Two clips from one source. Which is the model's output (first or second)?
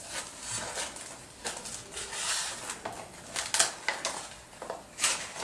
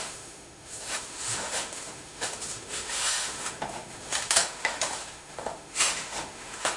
second